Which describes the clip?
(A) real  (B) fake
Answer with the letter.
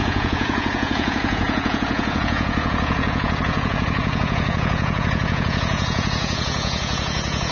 B